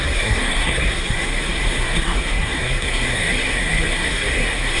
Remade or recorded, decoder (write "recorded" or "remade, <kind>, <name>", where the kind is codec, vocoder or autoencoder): remade, codec, SNAC